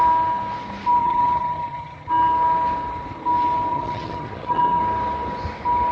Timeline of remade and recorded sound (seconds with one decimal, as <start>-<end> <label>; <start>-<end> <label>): 0.0-1.0 recorded; 1.0-2.1 remade; 2.1-3.7 recorded; 3.7-4.8 remade; 4.8-5.9 recorded

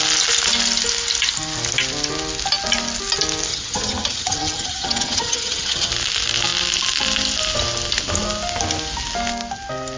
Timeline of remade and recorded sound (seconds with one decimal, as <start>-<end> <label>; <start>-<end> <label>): 0.0-3.5 recorded; 3.5-5.9 remade; 5.9-10.0 recorded

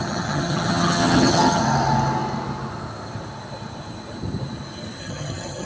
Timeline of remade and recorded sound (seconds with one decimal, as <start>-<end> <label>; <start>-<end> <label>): 0.0-1.6 remade; 1.6-5.0 recorded; 5.0-5.7 remade

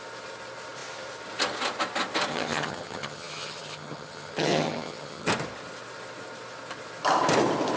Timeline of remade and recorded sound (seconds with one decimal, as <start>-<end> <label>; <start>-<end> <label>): 0.0-2.3 recorded; 2.3-5.3 remade; 5.3-7.8 recorded

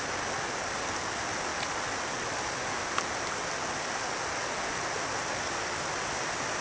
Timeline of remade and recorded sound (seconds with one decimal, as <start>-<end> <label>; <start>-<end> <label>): 0.0-6.6 recorded

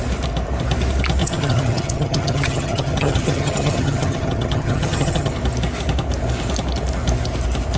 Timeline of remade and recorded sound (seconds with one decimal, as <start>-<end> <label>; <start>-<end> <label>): 0.0-1.2 recorded; 1.2-5.3 remade; 5.3-7.8 recorded

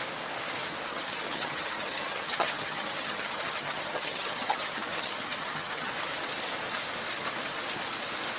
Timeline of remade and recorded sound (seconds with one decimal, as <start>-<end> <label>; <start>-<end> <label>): 0.0-0.9 recorded; 0.9-5.9 remade; 5.9-8.4 recorded

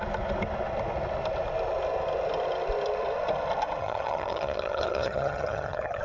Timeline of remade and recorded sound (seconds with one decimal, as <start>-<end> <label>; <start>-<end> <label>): 0.0-3.8 recorded; 3.8-6.0 remade